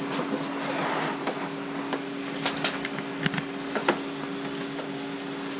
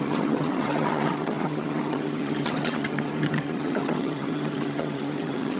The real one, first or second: first